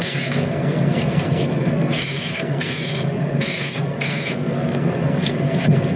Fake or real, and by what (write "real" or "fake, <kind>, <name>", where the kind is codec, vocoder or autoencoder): fake, codec, SNAC